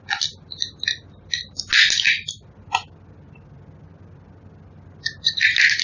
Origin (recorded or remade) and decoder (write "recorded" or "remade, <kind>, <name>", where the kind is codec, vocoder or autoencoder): recorded